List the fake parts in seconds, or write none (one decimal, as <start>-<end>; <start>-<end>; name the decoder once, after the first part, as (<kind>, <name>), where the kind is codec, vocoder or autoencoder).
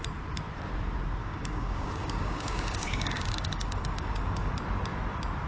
1.2-4.5 (codec, DAC)